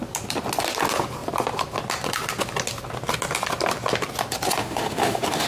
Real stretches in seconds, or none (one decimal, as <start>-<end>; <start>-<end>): 0.0-4.6